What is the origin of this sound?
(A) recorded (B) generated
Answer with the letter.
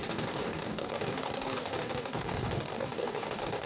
B